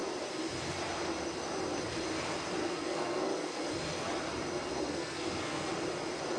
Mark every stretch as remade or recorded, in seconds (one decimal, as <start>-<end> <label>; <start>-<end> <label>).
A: 0.0-2.6 recorded; 2.6-3.6 remade; 3.6-4.7 recorded; 4.7-5.7 remade; 5.7-6.4 recorded